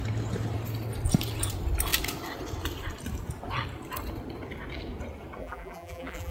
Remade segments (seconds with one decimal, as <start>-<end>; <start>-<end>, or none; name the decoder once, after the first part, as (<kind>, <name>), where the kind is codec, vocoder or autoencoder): 5.4-6.3 (vocoder, BigVGAN v2)